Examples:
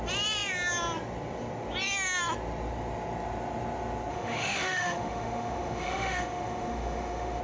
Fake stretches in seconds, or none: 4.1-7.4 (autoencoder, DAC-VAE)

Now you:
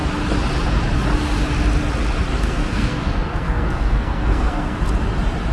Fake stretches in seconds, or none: 2.3-4.8 (codec, SNAC)

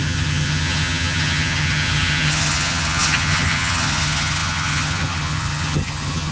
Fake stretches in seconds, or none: 0.0-6.3 (vocoder, HiFi-GAN)

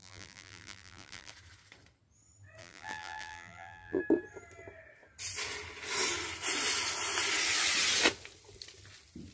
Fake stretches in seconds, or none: 0.0-1.3 (vocoder, BigVGAN v2); 2.6-4.0

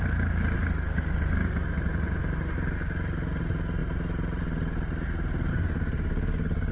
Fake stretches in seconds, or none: 5.5-6.7 (codec, DAC)

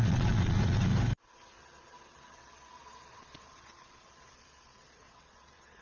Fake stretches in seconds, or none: 0.0-0.9 (vocoder, Vocos); 1.6-5.8